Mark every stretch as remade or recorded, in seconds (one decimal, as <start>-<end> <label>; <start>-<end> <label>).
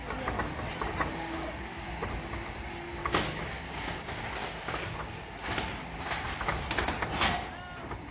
0.0-1.1 recorded; 1.1-2.0 remade; 2.0-3.0 recorded; 3.0-4.8 remade; 4.8-8.1 recorded